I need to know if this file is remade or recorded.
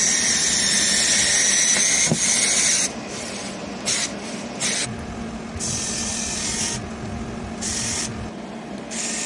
recorded